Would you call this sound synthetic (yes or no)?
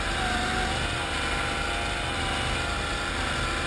no